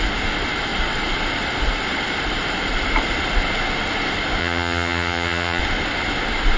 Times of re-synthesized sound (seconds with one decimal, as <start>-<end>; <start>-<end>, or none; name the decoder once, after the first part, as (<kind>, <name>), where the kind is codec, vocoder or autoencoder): 4.4-5.6 (vocoder, HiFi-GAN)

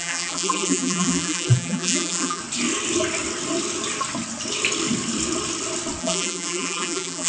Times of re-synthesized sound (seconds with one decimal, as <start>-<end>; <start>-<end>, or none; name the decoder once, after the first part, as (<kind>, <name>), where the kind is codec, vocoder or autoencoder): 0.0-2.4 (vocoder, BigVGAN v2); 6.0-7.3

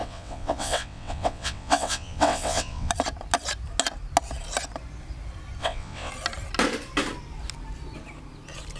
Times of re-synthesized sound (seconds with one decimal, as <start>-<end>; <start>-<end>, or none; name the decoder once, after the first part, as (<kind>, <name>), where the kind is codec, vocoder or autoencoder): 0.0-2.9 (vocoder, WaveNeXt); 5.6-6.1

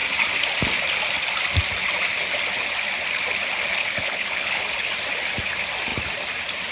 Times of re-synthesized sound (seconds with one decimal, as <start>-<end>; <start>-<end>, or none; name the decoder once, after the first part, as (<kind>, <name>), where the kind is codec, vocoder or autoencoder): 3.8-4.6 (codec, HILCodec)

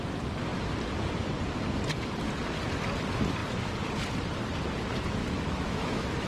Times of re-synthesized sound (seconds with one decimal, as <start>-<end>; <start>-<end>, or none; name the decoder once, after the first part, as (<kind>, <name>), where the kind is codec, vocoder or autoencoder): 5.2-6.3 (autoencoder, DAC-VAE)

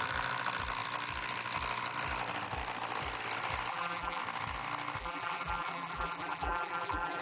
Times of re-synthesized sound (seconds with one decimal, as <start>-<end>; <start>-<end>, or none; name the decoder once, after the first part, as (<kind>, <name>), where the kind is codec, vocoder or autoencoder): 3.7-4.2 (vocoder, BigVGAN v2); 5.0-7.2